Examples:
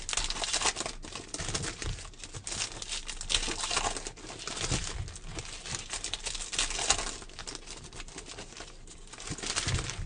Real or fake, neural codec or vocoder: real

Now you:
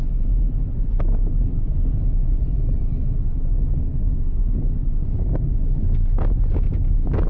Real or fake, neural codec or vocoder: real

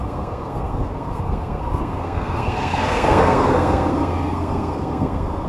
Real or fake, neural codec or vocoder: fake, codec, SNAC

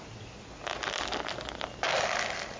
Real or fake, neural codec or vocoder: real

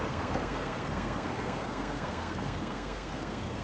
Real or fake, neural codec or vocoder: fake, codec, SNAC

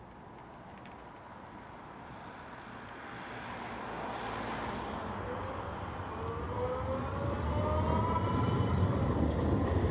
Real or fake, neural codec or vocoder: real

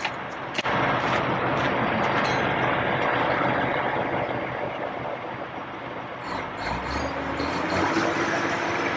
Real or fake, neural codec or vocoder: real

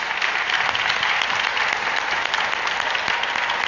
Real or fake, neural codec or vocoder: real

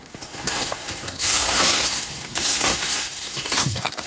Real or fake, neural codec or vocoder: fake, codec, SNAC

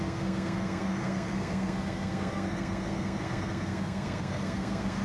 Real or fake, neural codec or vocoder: fake, codec, SNAC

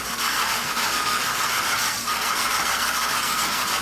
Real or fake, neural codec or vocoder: fake, codec, SNAC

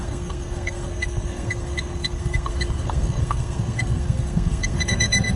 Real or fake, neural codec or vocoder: fake, codec, SNAC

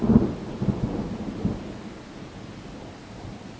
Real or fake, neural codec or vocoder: real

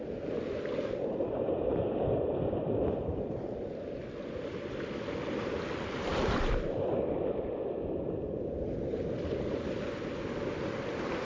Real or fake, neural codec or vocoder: real